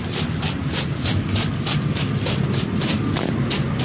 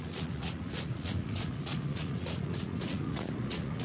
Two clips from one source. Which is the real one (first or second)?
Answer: first